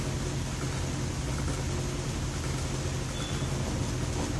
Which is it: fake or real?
real